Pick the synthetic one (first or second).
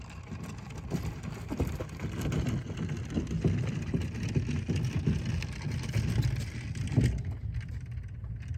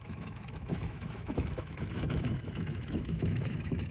second